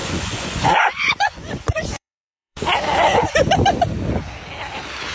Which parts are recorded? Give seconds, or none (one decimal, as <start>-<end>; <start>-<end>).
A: 2.6-5.1